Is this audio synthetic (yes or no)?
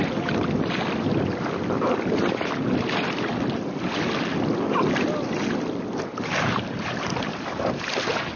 no